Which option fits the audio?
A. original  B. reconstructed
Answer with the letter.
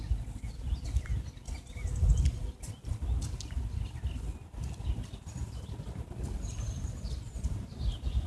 A